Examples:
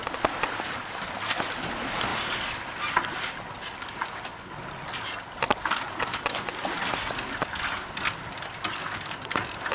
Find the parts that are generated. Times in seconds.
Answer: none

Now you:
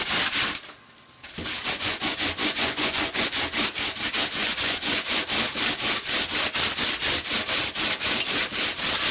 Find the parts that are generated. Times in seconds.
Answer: 1.4-3.3; 4.4-5.2

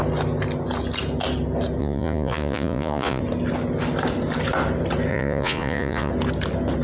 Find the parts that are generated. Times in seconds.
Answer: 1.8-3.2; 5.1-6.1

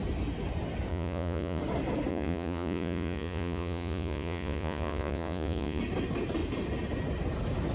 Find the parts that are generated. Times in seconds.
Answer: 0.9-1.6; 2.1-5.8

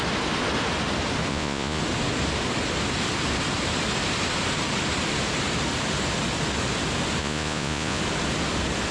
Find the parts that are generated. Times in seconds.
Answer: 1.3-1.8; 7.2-8.0

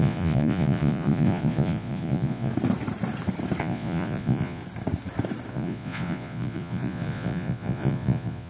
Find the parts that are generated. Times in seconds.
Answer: 0.0-2.5; 3.6-4.6; 5.5-8.5